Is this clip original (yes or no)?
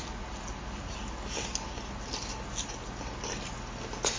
yes